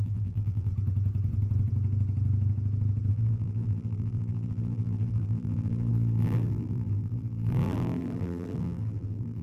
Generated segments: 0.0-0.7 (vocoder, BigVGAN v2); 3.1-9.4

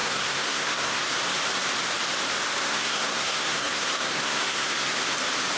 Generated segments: 0.0-1.1 (codec, SNAC); 2.6-5.0

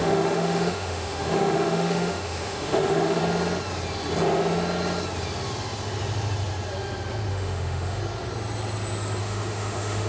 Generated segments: 0.0-3.2 (autoencoder, DAC-VAE); 7.3-8.0; 9.2-10.1

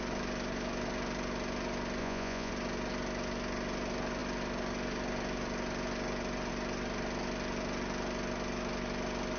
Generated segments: 2.0-2.5 (vocoder, Vocos)

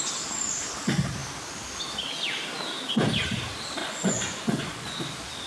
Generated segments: 3.8-5.0 (vocoder, Vocos)

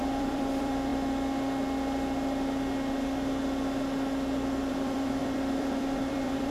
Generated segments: 0.0-0.9 (vocoder, BigVGAN v2); 4.7-6.5